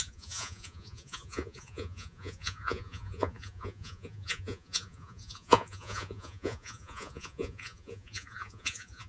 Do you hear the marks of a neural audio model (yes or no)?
yes